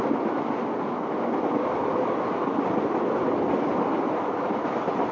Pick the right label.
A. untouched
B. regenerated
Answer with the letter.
A